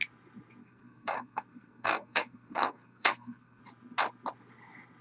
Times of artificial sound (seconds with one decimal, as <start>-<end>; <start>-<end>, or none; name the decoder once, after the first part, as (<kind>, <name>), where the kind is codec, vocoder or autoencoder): 0.6-3.6 (codec, SNAC)